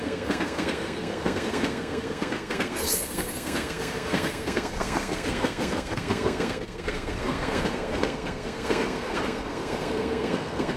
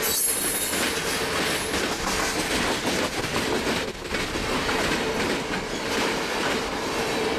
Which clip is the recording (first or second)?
second